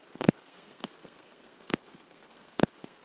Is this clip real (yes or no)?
no